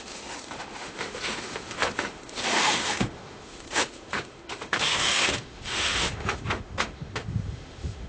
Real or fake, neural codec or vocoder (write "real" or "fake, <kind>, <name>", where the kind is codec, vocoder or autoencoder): fake, autoencoder, DAC-VAE